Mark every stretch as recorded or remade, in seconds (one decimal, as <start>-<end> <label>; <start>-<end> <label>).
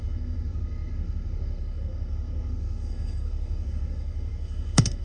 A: 0.0-5.0 remade